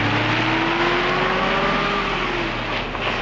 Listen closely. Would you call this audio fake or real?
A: real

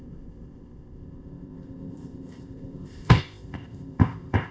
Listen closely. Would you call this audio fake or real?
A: fake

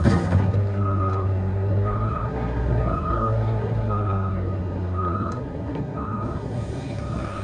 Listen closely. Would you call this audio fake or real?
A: fake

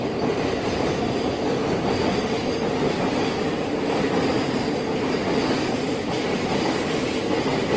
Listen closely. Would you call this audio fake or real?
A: real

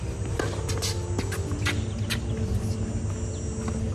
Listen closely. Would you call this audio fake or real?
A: real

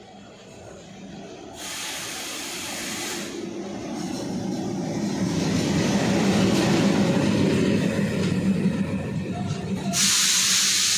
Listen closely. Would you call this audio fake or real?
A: real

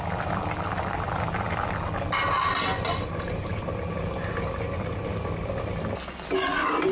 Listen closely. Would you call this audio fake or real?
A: real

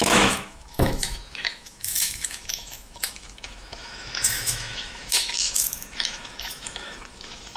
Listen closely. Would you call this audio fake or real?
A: fake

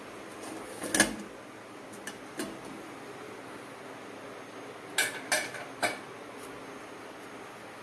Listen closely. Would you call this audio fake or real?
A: real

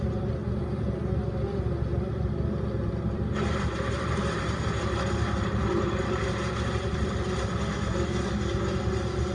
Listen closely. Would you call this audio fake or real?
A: fake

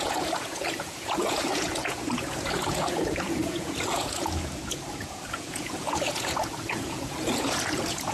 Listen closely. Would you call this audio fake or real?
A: fake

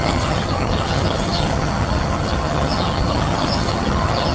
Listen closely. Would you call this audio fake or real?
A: fake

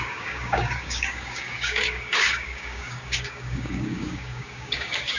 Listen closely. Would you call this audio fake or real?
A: fake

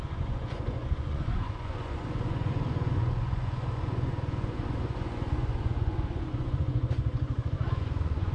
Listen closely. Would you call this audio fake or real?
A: fake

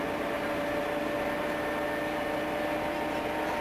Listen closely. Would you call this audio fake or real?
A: real